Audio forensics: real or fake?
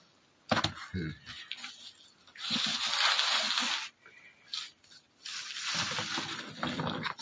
real